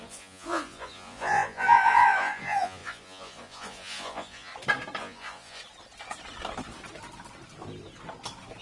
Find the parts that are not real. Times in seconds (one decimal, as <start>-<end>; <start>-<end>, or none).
0.0-4.5; 5.0-5.6